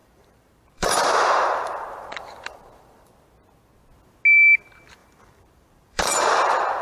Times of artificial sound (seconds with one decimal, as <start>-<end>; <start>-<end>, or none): 0.0-3.1; 5.0-6.2